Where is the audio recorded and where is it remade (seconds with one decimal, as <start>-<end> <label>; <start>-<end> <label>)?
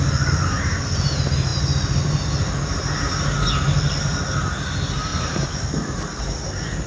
0.0-5.1 recorded; 5.1-6.2 remade; 6.2-6.9 recorded